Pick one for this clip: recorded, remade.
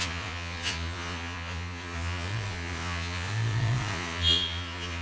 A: remade